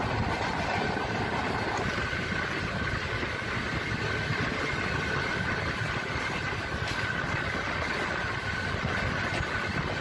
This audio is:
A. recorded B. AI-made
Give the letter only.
A